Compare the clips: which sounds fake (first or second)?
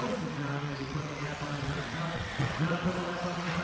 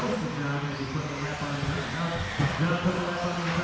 first